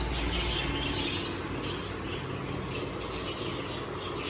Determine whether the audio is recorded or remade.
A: recorded